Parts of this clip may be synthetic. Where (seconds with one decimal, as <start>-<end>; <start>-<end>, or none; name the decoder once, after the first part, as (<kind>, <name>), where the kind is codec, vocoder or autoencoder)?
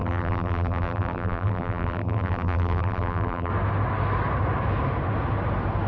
0.0-3.5 (vocoder, BigVGAN v2)